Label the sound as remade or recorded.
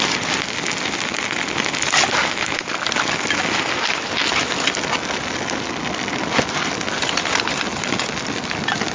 recorded